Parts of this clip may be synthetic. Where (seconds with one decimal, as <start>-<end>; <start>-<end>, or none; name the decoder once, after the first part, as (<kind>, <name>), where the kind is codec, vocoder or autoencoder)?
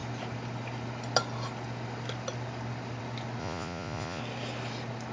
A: 3.4-4.2 (vocoder, Vocos)